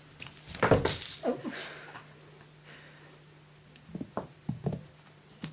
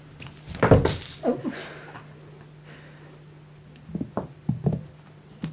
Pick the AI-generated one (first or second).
first